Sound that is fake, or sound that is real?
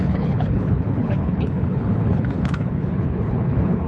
fake